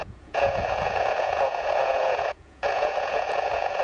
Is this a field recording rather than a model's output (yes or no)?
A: no